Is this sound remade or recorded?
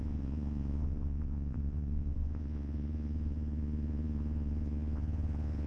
remade